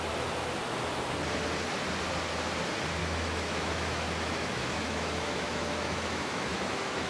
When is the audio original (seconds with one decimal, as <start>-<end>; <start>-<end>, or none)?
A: 0.0-3.0